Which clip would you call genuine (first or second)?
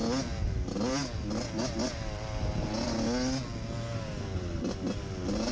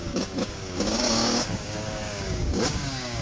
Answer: first